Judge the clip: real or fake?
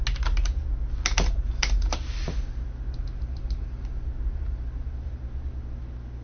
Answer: real